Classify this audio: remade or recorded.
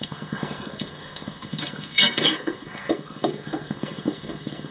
remade